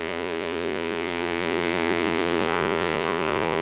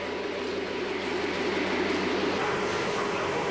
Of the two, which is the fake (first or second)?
first